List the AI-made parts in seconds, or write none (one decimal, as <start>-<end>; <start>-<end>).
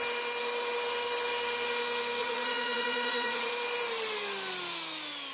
2.2-3.5